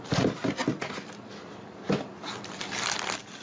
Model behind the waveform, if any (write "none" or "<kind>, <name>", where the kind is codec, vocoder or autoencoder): vocoder, BigVGAN v2